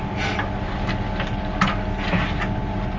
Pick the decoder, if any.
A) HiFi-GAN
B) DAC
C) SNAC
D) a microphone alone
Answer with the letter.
D